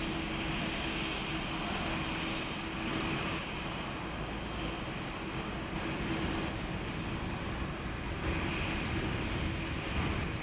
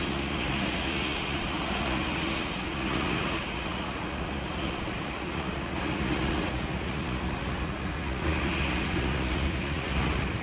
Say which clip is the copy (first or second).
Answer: second